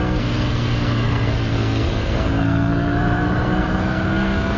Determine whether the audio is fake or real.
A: fake